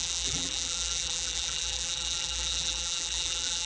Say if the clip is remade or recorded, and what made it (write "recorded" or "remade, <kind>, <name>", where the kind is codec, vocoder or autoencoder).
remade, vocoder, BigVGAN v2